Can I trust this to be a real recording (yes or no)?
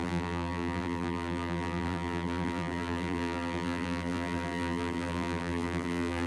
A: no